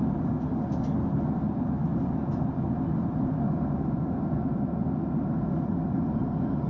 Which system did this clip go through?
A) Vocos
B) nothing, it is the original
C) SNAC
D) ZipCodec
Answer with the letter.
B